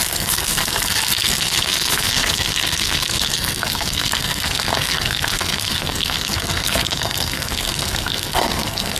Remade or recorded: remade